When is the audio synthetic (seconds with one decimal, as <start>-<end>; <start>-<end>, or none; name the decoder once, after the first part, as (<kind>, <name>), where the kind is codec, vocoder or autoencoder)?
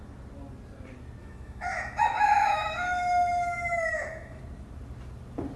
1.2-4.4 (autoencoder, DAC-VAE)